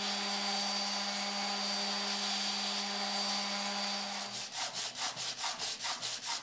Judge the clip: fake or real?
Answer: real